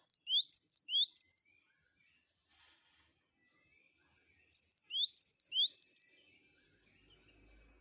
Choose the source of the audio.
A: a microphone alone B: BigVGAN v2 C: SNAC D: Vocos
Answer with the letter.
A